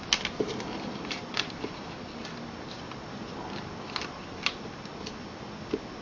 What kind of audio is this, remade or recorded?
recorded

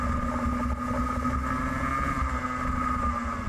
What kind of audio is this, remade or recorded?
recorded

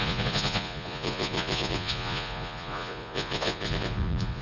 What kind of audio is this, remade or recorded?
remade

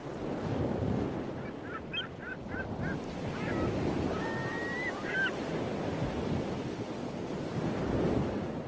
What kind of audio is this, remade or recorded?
recorded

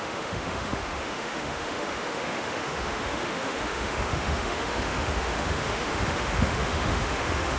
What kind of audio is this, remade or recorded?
remade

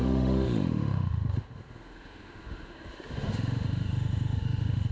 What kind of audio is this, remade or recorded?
remade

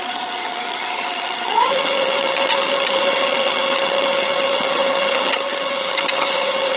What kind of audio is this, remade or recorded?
remade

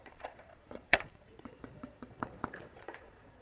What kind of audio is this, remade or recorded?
remade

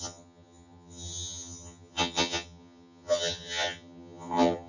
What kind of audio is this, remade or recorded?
remade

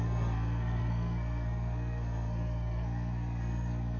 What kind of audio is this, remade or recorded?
remade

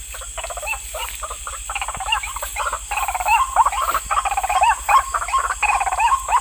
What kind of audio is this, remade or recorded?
remade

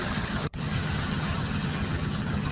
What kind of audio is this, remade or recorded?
remade